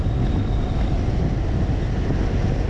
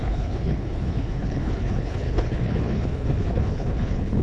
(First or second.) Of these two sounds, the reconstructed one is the second